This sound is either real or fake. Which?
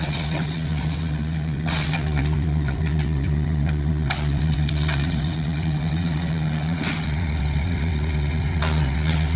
fake